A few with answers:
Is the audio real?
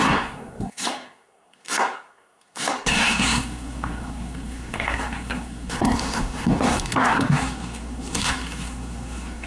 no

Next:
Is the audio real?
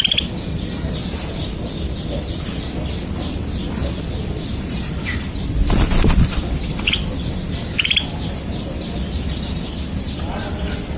yes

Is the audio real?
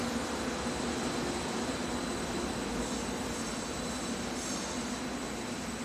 yes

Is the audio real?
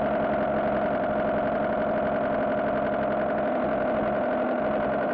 yes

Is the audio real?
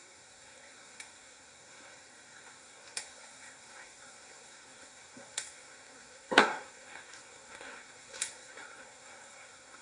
no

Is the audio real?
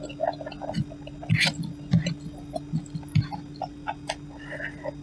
yes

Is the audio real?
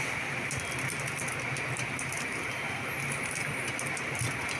yes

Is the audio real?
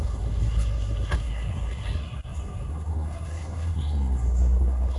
no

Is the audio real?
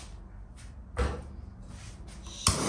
yes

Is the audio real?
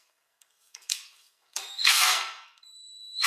no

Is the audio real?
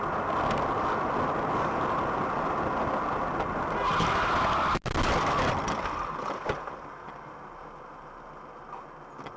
yes